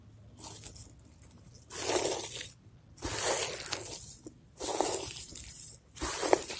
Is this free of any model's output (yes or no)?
yes